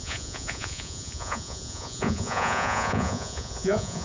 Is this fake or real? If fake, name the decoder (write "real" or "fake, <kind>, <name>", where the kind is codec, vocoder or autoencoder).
fake, vocoder, Vocos